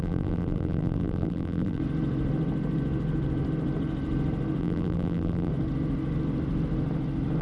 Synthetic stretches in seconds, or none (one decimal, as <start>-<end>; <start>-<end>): 0.0-1.8; 4.6-5.5